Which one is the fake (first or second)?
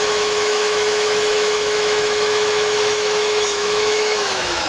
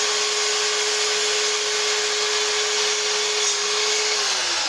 first